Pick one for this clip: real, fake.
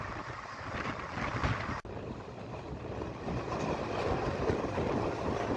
real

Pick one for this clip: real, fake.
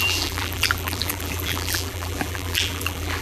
fake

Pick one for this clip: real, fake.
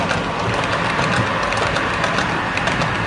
real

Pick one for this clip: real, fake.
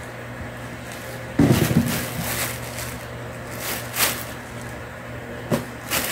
real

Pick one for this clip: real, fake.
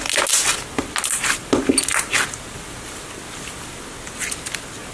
real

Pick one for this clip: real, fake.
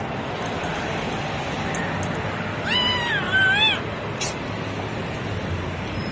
real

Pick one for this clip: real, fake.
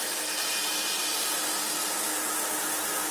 real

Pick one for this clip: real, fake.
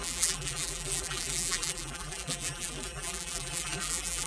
fake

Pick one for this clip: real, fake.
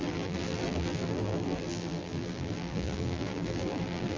fake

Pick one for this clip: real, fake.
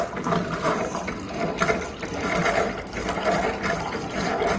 fake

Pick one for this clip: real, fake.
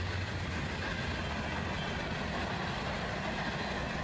real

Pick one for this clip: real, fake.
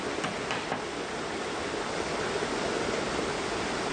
real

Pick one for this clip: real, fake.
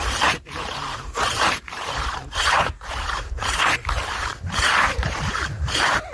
fake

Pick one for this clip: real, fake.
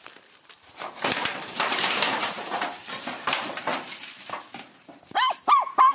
fake